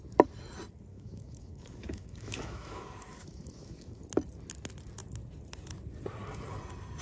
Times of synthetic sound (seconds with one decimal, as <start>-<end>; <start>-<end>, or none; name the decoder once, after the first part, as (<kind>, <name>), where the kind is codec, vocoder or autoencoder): 0.9-4.0 (autoencoder, DAC-VAE)